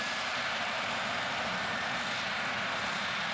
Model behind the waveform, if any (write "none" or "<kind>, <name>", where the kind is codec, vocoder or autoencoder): none